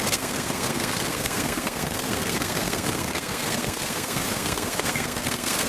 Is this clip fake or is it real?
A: fake